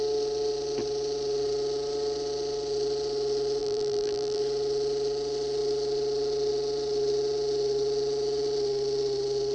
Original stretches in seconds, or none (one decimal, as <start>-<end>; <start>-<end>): 0.0-3.6; 4.4-9.5